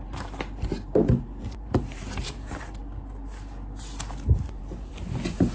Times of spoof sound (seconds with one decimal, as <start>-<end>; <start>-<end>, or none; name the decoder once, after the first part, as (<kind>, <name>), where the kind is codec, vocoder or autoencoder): 0.0-2.8 (vocoder, BigVGAN v2); 4.6-5.5